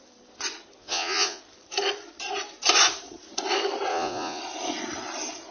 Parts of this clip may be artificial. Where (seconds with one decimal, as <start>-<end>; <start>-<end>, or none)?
0.8-1.4; 3.9-4.4